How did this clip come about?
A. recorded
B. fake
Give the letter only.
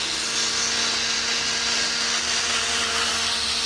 A